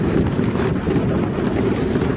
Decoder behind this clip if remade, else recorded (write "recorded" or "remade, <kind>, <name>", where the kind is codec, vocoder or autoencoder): recorded